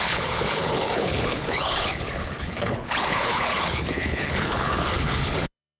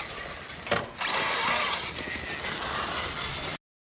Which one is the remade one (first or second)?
first